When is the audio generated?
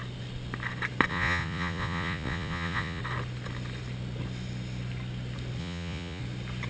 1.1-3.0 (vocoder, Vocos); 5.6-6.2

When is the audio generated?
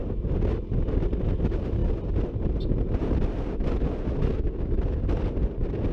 none